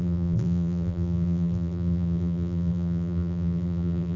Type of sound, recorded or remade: remade